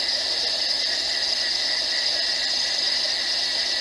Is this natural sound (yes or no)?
yes